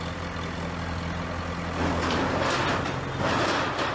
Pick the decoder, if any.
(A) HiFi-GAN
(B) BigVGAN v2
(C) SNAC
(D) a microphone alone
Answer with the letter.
D